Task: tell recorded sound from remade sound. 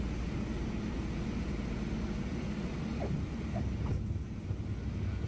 recorded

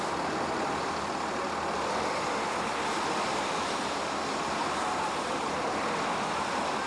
recorded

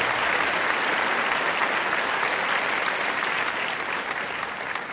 recorded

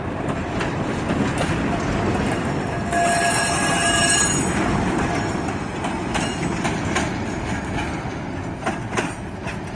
recorded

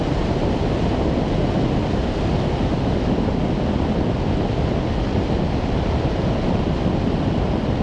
recorded